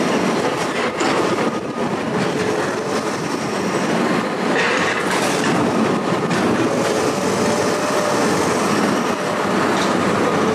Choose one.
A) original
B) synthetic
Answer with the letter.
A